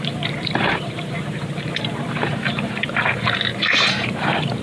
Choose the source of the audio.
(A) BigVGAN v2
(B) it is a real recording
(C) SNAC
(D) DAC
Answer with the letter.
A